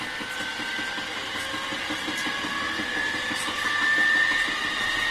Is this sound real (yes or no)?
yes